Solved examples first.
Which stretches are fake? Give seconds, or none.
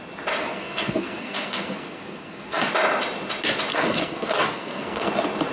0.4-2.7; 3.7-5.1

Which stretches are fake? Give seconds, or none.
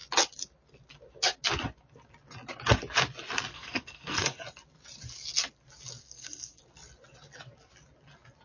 3.5-4.4; 6.0-6.6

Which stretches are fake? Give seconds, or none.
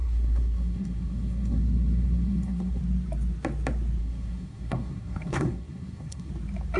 0.0-2.8; 4.0-6.3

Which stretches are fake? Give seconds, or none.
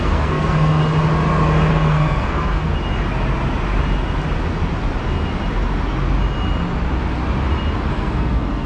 0.0-0.8; 1.7-2.7; 7.9-8.7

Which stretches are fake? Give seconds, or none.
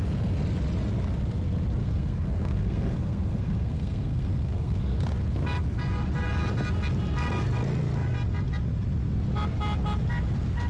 1.8-5.0